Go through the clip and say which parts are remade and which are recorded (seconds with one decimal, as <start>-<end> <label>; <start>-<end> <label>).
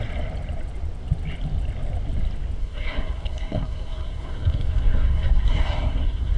0.0-2.6 recorded; 2.6-6.4 remade